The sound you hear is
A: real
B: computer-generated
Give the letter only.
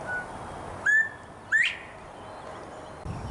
A